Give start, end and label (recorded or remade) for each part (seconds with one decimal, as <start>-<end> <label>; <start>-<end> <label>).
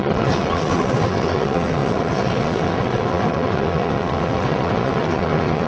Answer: 0.0-5.7 remade